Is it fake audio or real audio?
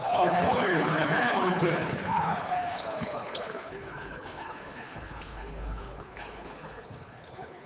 fake